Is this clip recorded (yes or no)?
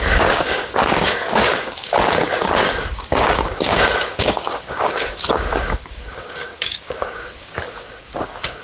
no